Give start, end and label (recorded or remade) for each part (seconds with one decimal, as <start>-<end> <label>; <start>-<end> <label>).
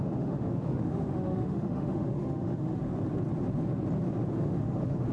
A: 0.0-2.9 remade; 2.9-4.3 recorded; 4.3-5.1 remade